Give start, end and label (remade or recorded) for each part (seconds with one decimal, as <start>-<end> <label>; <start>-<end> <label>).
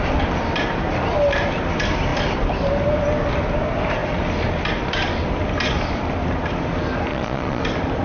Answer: 0.0-7.1 recorded; 7.1-7.6 remade; 7.6-8.0 recorded